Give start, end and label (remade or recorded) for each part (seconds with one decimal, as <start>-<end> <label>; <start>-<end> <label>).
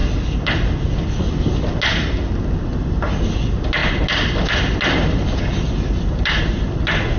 0.0-7.2 recorded